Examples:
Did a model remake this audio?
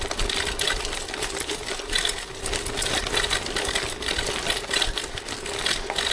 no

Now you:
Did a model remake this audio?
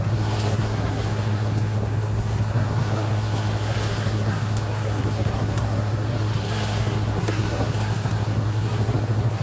yes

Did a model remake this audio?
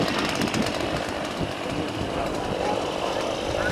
no